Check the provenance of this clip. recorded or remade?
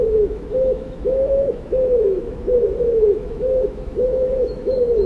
remade